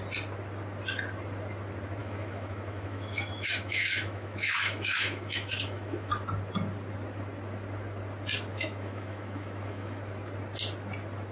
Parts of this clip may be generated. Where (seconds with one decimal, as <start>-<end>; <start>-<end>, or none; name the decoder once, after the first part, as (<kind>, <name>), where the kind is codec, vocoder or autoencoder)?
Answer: 2.0-6.1 (autoencoder, DAC-VAE); 8.5-10.0